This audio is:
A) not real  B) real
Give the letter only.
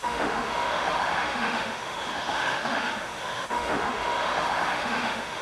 A